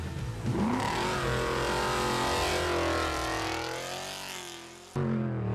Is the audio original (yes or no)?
yes